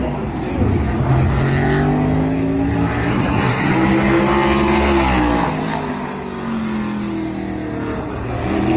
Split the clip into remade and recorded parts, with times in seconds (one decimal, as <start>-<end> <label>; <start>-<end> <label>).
0.0-3.1 recorded; 3.1-3.7 remade; 3.7-8.8 recorded